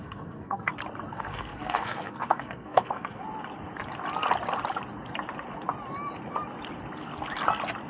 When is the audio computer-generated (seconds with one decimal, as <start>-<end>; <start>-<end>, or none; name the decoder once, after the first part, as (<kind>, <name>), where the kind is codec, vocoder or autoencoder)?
0.0-0.7 (codec, SNAC); 1.1-3.2